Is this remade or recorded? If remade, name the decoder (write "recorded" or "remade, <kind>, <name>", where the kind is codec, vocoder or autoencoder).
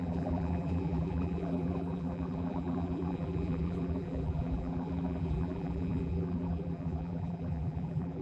remade, vocoder, BigVGAN v2